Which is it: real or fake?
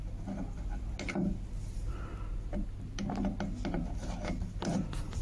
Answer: real